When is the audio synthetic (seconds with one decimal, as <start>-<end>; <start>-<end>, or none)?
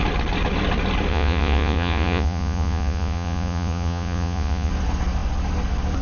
1.1-4.7